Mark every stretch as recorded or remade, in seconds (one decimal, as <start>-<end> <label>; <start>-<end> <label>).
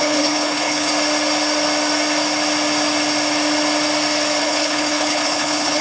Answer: 0.0-0.9 remade; 0.9-4.4 recorded; 4.4-5.8 remade